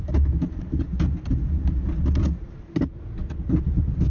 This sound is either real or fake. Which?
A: real